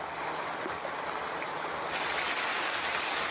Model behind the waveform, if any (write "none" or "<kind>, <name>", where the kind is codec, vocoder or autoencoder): none